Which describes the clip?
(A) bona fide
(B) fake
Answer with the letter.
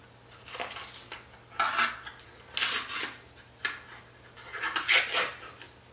A